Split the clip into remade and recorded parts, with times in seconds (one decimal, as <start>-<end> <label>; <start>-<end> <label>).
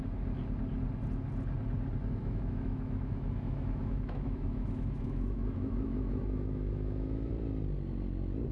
0.0-2.2 recorded; 2.2-7.3 remade; 7.3-8.5 recorded